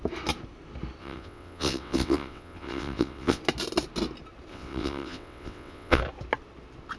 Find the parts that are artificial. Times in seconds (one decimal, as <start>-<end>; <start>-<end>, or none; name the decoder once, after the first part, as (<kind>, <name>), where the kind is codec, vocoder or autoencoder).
1.0-3.4 (vocoder, WaveNeXt); 4.5-6.0